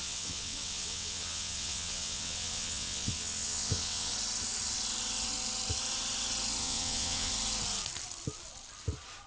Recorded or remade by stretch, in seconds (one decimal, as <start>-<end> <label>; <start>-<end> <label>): 0.0-4.1 remade; 4.1-6.6 recorded; 6.6-7.3 remade; 7.3-9.3 recorded